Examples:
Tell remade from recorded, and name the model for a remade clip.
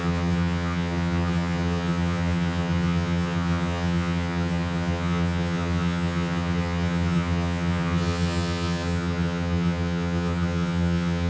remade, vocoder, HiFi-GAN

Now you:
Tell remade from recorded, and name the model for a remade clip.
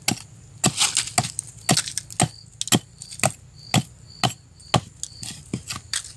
recorded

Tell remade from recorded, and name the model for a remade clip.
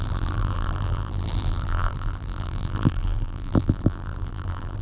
remade, vocoder, BigVGAN v2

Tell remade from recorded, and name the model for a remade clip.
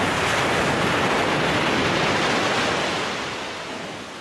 recorded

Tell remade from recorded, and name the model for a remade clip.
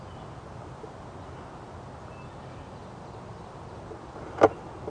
recorded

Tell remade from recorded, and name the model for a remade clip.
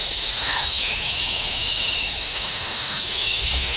remade, autoencoder, DAC-VAE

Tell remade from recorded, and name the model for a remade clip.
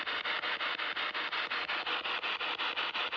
recorded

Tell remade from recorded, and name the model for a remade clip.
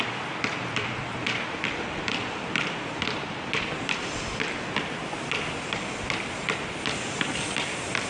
remade, vocoder, BigVGAN v2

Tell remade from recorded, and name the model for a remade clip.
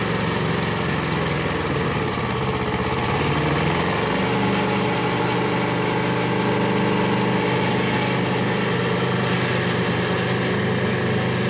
recorded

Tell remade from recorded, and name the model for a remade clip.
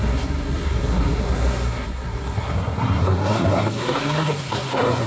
remade, codec, SNAC